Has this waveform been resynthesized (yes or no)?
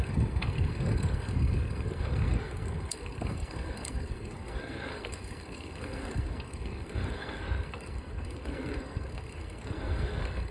yes